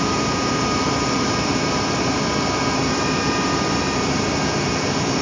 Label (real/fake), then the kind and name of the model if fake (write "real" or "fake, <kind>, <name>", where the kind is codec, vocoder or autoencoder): fake, vocoder, BigVGAN v2